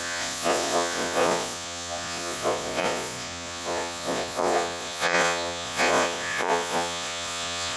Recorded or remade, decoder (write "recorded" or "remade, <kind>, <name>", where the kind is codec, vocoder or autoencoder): remade, vocoder, Vocos